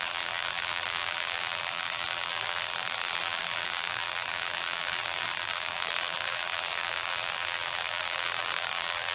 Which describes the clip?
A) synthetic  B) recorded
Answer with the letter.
A